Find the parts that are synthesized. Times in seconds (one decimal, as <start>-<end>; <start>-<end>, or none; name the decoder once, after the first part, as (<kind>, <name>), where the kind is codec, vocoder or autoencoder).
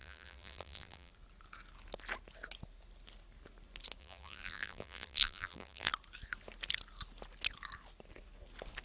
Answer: 0.0-1.1 (vocoder, BigVGAN v2); 4.0-5.9